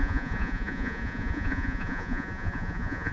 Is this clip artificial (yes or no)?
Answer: yes